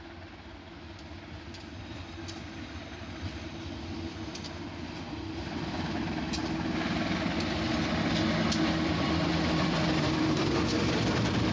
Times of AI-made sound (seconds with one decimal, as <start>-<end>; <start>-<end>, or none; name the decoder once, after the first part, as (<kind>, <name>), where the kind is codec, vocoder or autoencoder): none